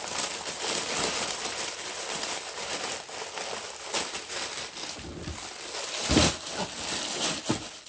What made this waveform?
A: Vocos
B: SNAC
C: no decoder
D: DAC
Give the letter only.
C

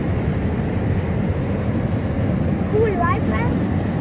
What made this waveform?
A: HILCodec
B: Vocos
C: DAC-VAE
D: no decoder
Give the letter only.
D